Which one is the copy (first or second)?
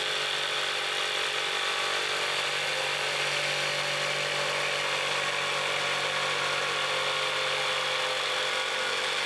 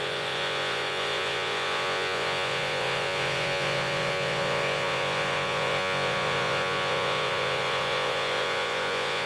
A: second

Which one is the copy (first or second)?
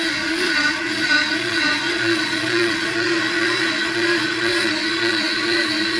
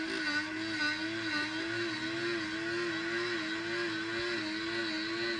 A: first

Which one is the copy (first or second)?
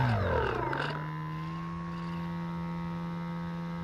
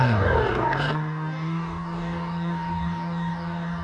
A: second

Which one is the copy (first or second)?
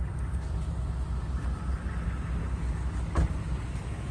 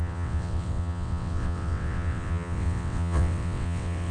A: second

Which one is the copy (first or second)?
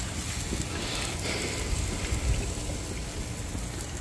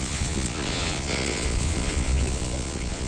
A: second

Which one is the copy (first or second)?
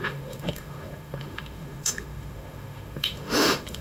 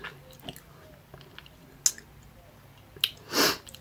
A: first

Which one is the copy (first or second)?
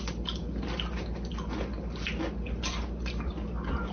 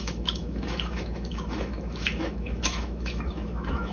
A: second